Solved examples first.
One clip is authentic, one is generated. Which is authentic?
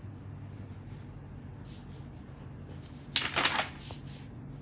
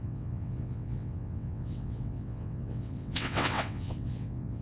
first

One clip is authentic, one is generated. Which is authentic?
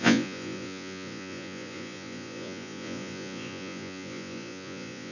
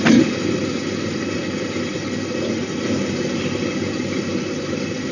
second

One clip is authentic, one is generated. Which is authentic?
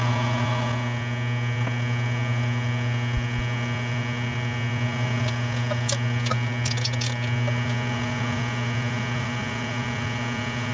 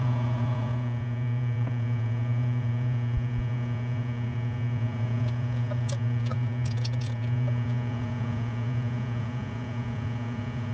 first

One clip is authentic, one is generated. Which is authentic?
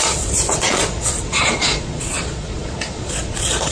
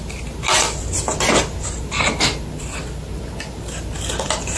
second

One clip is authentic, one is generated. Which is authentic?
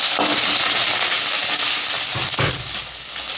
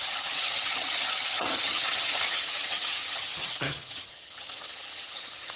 first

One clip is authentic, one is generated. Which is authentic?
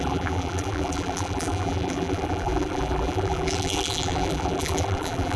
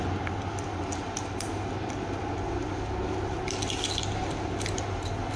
second